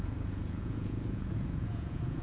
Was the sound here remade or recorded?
remade